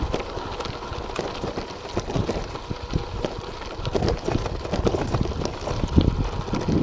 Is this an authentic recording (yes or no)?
yes